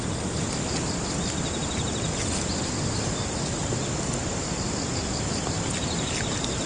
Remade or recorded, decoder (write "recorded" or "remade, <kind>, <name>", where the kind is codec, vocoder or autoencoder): recorded